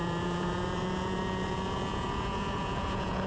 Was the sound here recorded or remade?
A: remade